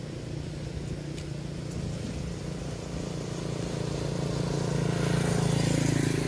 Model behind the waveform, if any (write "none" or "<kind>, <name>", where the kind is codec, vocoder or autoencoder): none